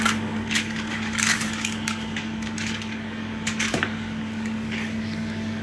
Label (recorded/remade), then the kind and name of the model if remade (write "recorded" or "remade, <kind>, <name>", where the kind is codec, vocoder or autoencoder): remade, codec, DAC